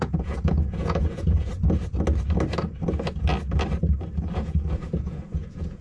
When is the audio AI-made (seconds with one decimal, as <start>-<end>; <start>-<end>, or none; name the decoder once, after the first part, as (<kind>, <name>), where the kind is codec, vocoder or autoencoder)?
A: 0.0-1.5 (vocoder, Vocos); 4.3-5.8